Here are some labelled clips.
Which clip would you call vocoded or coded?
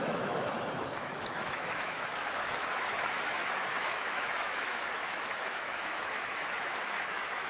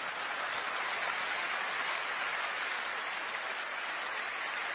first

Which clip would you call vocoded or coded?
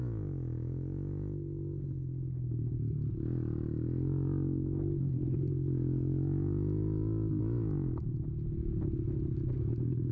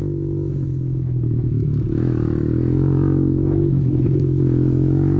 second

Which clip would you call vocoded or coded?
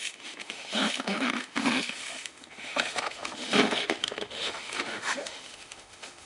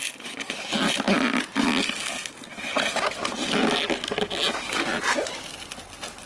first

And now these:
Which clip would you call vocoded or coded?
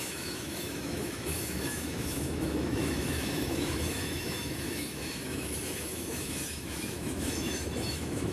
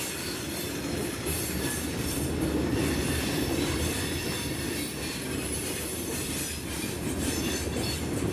first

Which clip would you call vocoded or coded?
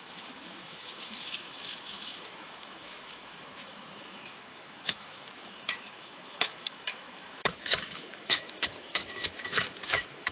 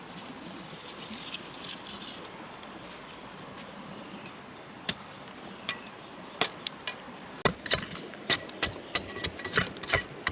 first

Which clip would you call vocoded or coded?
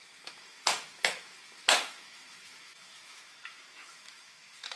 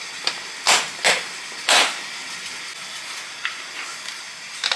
first